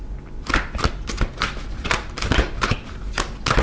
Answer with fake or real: real